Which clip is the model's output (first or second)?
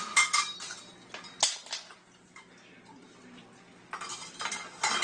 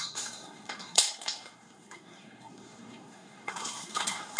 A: second